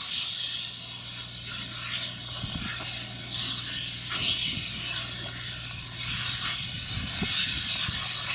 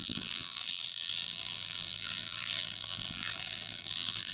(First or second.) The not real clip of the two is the second